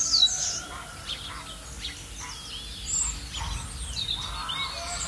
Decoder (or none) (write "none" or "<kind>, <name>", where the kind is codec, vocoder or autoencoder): none